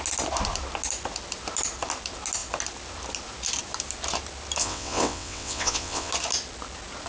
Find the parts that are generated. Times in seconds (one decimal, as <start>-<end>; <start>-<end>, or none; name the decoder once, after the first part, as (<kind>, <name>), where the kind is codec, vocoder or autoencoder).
4.6-6.1 (vocoder, WaveNeXt)